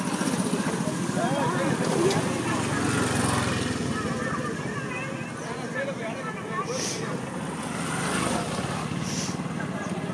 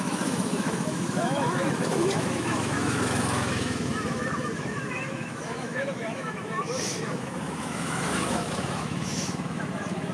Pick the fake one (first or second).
second